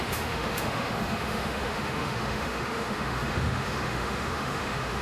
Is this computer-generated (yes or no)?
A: yes